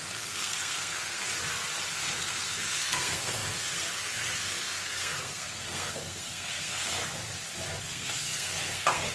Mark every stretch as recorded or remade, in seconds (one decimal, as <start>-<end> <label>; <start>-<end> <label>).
0.0-1.4 remade; 1.4-1.9 recorded; 1.9-7.0 remade; 7.0-7.8 recorded; 7.8-9.1 remade